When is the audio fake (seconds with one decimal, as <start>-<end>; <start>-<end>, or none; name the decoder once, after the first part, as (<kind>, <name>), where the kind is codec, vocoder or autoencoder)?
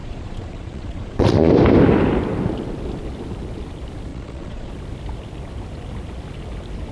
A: 0.0-1.5 (vocoder, Vocos); 4.1-4.7